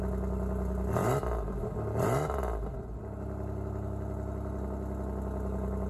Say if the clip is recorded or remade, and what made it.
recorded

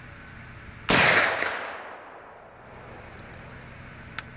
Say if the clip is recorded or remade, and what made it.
recorded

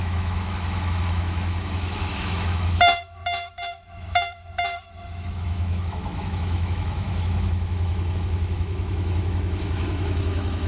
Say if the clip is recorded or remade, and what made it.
remade, autoencoder, DAC-VAE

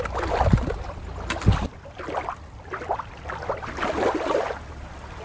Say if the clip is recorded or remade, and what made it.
recorded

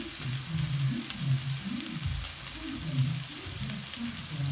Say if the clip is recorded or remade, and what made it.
recorded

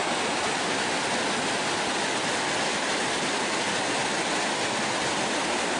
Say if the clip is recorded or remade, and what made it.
recorded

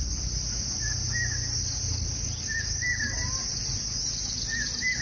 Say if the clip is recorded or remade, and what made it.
recorded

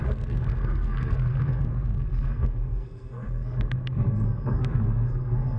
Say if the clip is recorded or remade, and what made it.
remade, codec, SNAC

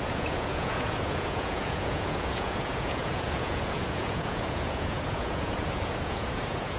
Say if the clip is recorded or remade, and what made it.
remade, vocoder, Vocos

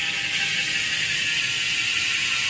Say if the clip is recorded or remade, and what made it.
recorded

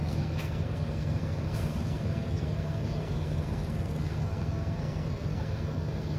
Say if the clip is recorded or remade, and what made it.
remade, codec, SNAC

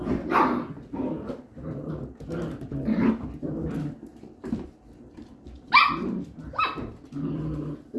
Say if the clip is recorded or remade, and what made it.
recorded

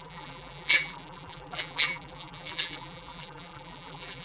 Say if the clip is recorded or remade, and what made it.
remade, vocoder, BigVGAN v2